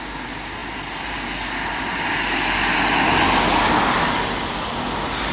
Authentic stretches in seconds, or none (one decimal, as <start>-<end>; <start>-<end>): 0.0-5.3